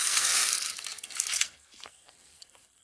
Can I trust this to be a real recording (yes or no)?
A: no